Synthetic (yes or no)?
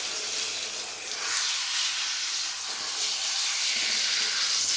no